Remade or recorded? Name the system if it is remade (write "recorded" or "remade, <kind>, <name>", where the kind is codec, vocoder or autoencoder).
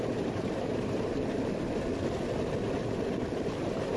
recorded